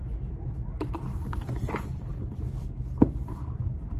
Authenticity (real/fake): fake